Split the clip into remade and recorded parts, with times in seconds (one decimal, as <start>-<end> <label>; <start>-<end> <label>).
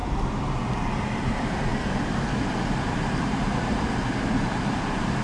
0.0-5.2 remade